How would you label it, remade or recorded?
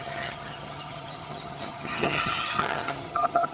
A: remade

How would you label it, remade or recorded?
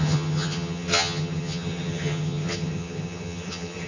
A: remade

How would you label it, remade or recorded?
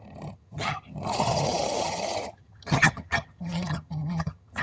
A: remade